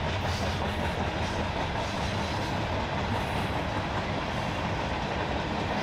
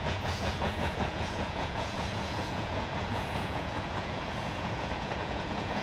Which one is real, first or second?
first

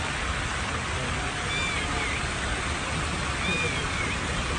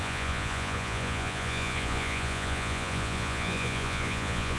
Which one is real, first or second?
first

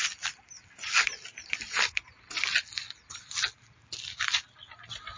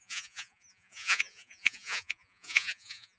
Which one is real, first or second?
first